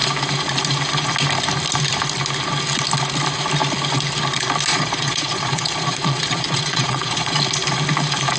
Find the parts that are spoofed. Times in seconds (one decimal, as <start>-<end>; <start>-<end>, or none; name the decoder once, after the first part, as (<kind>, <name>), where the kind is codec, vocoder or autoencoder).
4.7-7.3 (vocoder, Vocos)